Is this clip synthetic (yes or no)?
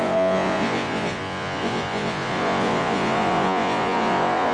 yes